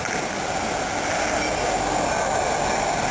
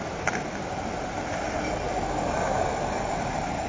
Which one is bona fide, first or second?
first